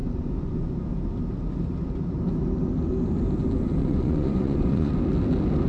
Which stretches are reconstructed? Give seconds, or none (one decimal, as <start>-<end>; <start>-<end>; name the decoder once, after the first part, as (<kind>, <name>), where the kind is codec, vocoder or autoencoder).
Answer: 0.0-0.7 (vocoder, Vocos); 3.8-4.9